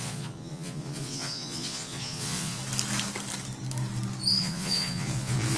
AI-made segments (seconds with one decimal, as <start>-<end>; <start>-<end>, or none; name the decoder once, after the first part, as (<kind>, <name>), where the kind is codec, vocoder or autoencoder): 0.0-2.6 (vocoder, Vocos); 4.4-5.6